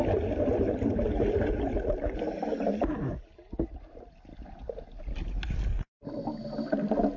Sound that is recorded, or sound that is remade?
recorded